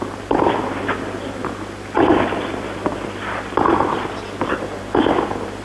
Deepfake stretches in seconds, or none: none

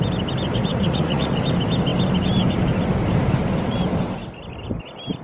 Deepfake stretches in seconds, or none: 0.7-1.4

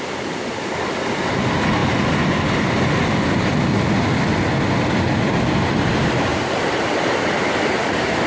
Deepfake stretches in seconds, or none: none